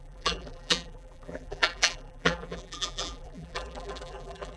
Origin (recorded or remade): remade